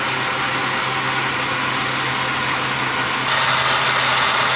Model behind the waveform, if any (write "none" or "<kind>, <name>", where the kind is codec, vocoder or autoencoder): none